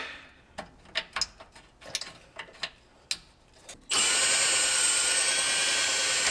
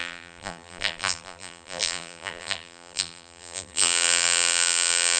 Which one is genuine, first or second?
first